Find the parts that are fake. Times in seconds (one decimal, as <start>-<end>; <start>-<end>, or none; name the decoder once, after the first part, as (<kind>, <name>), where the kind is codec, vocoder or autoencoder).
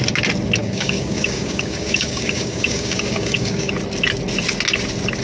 0.6-3.7 (codec, DAC)